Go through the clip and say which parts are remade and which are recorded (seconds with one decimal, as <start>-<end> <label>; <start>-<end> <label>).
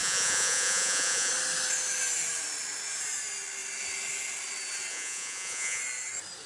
0.0-1.3 remade; 1.3-4.9 recorded; 4.9-5.8 remade; 5.8-6.5 recorded